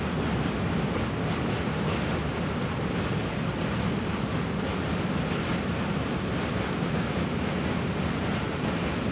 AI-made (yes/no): no